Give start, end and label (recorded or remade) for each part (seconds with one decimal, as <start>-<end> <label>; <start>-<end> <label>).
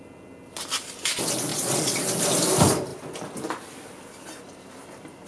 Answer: 0.0-1.5 recorded; 1.5-2.0 remade; 2.0-5.3 recorded